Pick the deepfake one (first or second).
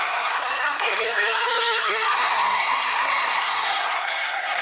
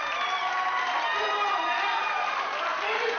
first